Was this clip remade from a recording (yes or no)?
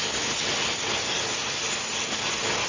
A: no